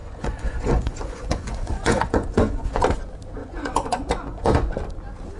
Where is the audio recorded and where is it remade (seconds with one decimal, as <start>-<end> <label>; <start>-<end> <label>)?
0.0-2.8 remade; 2.8-3.4 recorded; 3.4-4.7 remade; 4.7-5.4 recorded